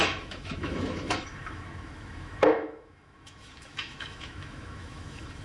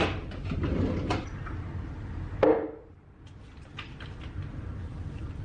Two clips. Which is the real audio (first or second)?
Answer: second